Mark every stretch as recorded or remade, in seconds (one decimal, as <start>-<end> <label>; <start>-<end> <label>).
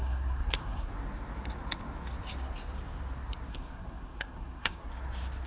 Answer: 0.0-0.9 remade; 0.9-3.5 recorded; 3.5-4.9 remade; 4.9-5.5 recorded